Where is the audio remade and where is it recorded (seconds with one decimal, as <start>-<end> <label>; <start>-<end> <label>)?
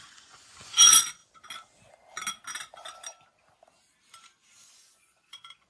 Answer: 0.0-1.2 remade; 1.2-4.6 recorded; 4.6-5.7 remade